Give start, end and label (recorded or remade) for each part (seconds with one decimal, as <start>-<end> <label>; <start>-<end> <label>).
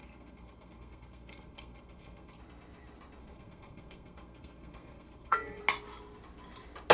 0.0-2.4 remade; 2.4-3.2 recorded; 3.2-5.6 remade; 5.6-6.9 recorded